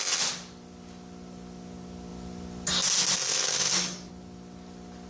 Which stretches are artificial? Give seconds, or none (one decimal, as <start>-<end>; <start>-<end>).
3.3-4.1